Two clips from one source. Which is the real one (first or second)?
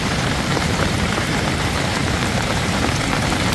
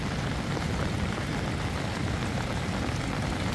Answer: second